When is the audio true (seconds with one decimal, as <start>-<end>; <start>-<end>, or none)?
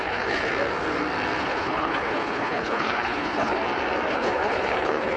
0.5-1.4; 3.6-4.1